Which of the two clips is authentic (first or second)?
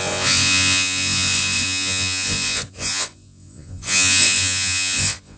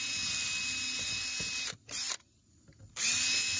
second